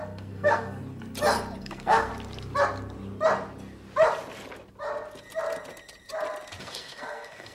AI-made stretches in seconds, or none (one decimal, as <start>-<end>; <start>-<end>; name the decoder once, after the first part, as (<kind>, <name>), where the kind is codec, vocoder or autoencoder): 0.0-0.8 (codec, SNAC); 1.6-2.1; 6.6-7.5